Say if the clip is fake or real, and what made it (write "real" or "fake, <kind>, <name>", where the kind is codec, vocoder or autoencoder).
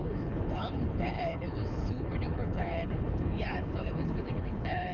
fake, codec, HILCodec